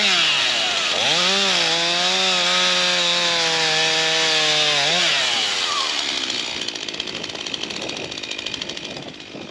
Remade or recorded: recorded